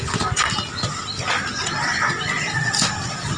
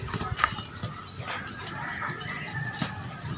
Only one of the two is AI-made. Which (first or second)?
second